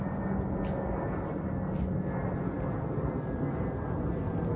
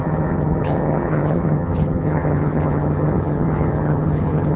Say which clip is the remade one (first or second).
second